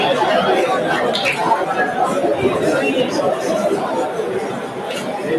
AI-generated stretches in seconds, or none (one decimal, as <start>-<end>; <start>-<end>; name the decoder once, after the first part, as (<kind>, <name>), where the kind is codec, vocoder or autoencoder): none

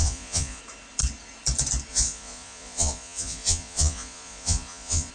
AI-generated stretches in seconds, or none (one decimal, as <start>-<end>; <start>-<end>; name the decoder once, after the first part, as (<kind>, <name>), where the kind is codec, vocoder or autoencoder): 0.0-0.6 (vocoder, Vocos); 1.9-5.1